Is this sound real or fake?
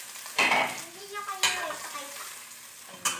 real